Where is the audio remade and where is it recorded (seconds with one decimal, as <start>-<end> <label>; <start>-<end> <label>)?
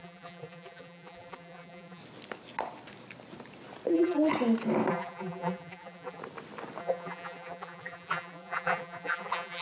0.0-2.0 remade; 2.0-3.9 recorded; 3.9-4.3 remade; 4.3-4.9 recorded; 4.9-6.2 remade; 6.2-6.8 recorded; 6.8-9.6 remade